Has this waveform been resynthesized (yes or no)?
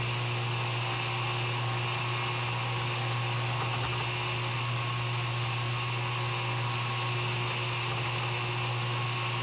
no